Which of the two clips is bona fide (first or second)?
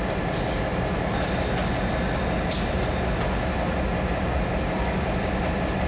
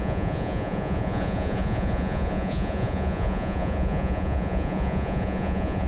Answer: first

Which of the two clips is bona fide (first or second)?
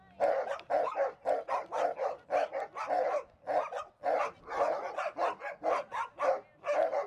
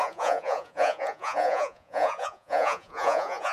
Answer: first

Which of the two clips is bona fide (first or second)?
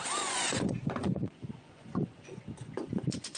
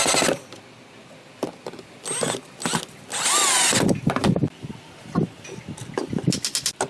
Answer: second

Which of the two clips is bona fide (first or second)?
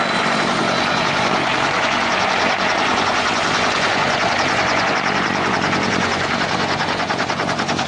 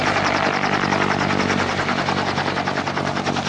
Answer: second